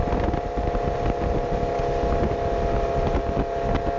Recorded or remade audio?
recorded